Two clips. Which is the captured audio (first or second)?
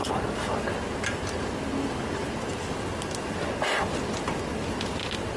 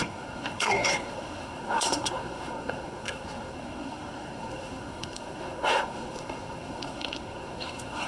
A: first